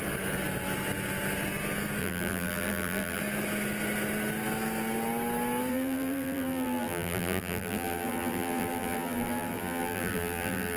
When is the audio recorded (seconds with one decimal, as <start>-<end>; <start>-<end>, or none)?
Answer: 0.0-2.0; 3.2-5.7